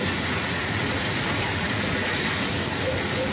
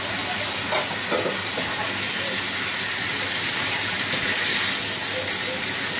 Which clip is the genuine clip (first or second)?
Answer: second